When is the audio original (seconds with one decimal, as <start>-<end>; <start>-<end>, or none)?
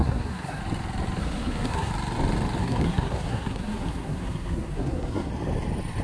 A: 0.6-1.2; 1.9-2.6; 5.3-6.0